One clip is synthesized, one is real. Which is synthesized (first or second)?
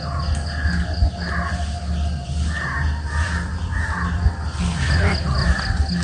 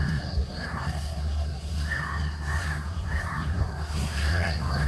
second